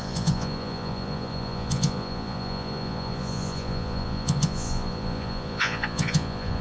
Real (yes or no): no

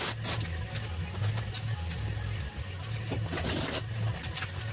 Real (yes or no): yes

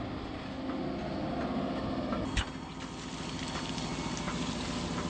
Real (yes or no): yes